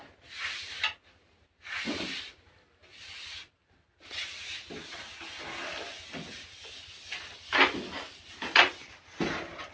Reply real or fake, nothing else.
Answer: real